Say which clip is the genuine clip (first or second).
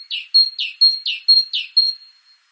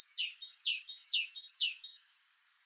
first